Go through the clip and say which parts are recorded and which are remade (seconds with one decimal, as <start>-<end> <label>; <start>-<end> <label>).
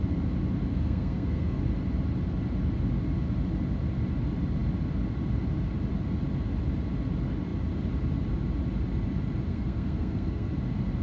0.0-0.7 recorded; 0.7-1.6 remade; 1.6-9.5 recorded; 9.5-10.5 remade; 10.5-11.0 recorded